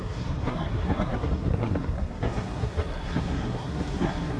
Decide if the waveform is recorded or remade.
remade